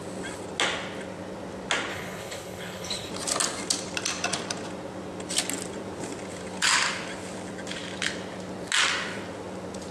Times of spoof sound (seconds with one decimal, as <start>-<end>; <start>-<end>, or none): 1.9-3.1